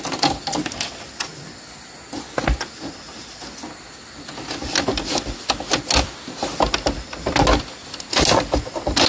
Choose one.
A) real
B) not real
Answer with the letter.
A